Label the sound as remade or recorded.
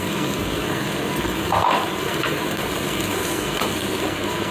remade